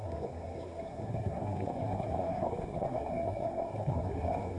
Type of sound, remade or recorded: remade